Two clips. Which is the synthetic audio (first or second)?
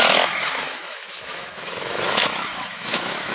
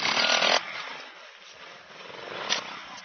first